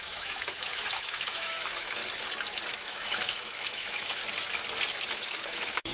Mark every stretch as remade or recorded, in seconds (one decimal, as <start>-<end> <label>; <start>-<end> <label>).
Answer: 0.0-2.0 remade; 2.0-2.7 recorded; 2.7-4.2 remade; 4.2-5.1 recorded; 5.1-5.9 remade